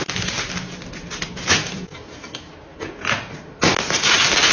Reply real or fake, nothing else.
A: real